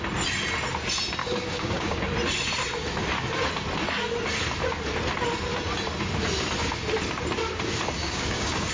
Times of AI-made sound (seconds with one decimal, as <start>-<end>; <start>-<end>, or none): 1.2-2.0; 8.0-8.7